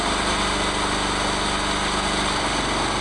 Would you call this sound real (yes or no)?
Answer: yes